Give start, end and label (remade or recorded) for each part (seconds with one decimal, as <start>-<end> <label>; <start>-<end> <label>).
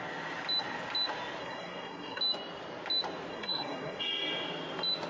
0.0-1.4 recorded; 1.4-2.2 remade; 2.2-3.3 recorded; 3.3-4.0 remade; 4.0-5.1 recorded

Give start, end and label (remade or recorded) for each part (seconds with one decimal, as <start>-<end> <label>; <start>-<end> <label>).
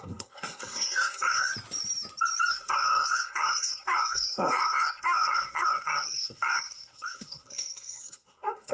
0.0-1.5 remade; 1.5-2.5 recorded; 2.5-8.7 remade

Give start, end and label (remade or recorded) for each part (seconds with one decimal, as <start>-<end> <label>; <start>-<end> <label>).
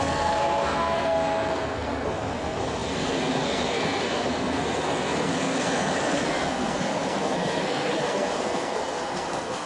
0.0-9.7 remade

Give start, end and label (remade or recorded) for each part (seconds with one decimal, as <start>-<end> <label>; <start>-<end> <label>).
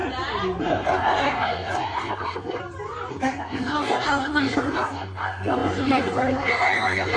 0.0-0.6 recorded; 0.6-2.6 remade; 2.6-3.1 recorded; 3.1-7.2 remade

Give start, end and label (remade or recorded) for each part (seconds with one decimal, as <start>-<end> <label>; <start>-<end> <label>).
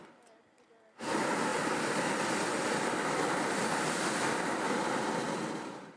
0.0-6.0 recorded